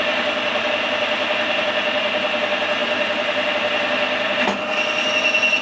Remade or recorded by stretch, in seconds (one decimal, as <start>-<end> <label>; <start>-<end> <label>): 0.0-5.6 recorded